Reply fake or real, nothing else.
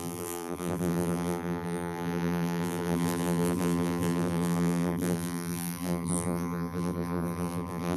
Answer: fake